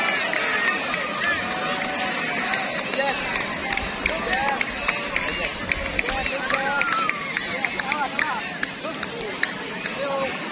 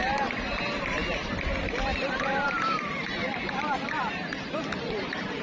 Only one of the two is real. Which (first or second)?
first